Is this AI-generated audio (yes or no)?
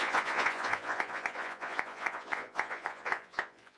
yes